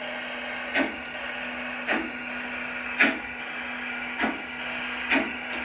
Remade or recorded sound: recorded